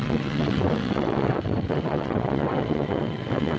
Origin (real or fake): fake